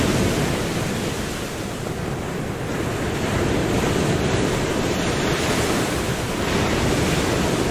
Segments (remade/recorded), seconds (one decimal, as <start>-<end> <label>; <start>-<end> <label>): 0.0-3.6 recorded; 3.6-6.4 remade; 6.4-7.7 recorded